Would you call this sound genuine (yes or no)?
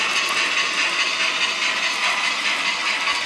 yes